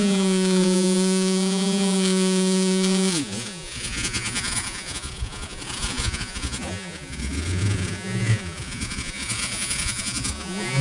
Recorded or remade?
remade